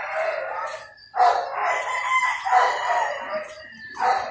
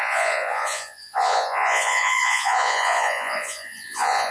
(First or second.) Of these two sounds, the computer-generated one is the second